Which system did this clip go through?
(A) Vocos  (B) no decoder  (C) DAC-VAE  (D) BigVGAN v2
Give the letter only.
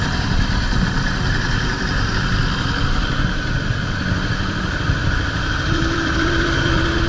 D